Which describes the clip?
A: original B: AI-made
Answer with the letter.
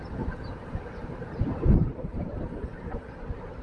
B